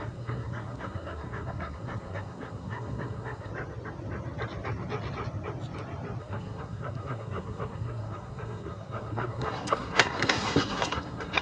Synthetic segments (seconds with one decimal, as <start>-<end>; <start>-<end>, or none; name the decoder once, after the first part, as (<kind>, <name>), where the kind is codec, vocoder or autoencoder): 0.0-3.5 (codec, SNAC); 6.2-11.4

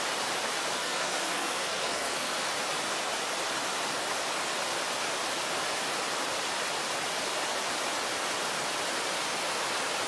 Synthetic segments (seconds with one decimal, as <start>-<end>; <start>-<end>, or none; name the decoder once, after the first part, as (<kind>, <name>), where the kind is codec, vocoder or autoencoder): 0.8-2.5 (codec, SNAC)

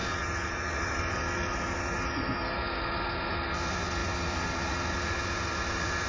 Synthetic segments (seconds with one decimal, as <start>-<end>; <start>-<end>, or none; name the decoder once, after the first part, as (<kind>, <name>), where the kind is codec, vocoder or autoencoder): none